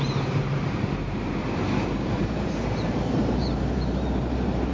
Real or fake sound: fake